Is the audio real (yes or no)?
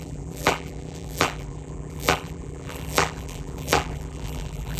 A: no